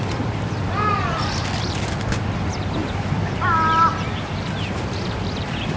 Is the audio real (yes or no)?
no